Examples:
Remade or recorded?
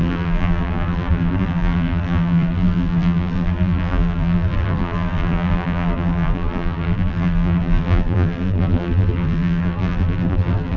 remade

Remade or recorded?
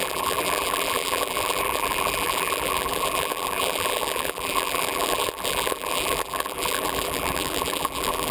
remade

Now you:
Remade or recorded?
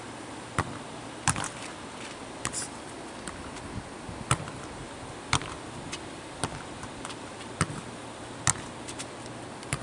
recorded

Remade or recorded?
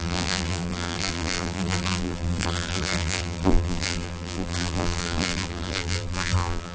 remade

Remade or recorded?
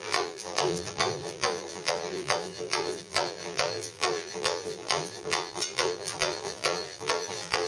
remade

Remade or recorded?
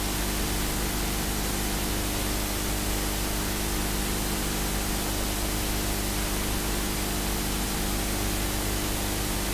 recorded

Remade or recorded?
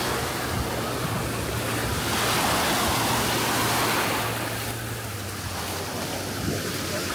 recorded